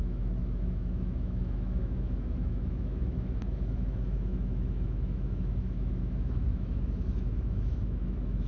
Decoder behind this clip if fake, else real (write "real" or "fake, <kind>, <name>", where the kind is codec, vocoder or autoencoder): fake, autoencoder, DAC-VAE